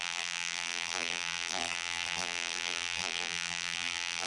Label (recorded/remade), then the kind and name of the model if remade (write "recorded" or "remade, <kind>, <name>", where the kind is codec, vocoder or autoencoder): remade, vocoder, BigVGAN v2